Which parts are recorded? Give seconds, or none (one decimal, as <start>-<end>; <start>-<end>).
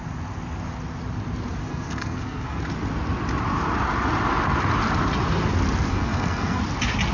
0.0-1.6; 2.6-5.9; 6.6-7.1